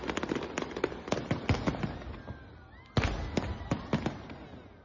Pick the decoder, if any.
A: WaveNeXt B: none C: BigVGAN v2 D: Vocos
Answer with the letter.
B